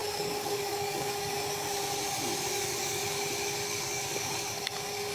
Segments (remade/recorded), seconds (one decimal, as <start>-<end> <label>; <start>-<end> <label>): 0.0-1.3 remade; 1.3-2.5 recorded; 2.5-3.0 remade; 3.0-3.7 recorded; 3.7-5.1 remade